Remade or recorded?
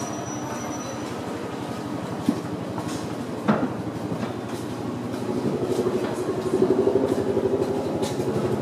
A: recorded